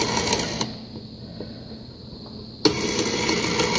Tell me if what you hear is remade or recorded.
recorded